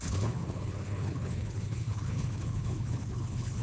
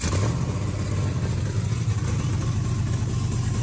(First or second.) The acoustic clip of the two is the second